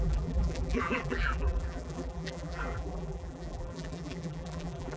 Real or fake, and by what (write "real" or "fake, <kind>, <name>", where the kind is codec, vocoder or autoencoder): fake, vocoder, BigVGAN v2